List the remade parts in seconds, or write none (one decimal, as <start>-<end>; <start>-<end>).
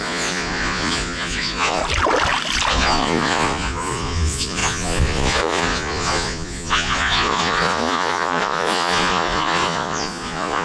0.0-1.8; 2.7-10.6